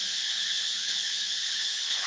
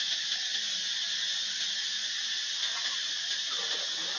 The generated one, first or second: first